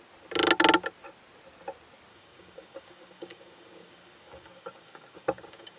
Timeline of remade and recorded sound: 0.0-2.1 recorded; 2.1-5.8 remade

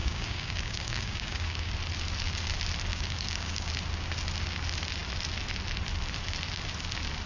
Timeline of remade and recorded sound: 0.0-1.7 remade; 1.7-2.9 recorded; 2.9-3.7 remade; 3.7-7.3 recorded